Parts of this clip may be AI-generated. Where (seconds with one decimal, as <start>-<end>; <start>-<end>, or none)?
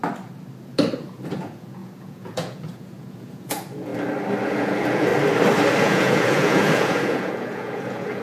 0.9-3.9; 4.5-5.1; 5.8-8.2